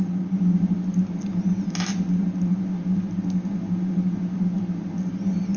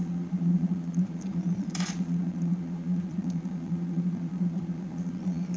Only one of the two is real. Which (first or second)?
first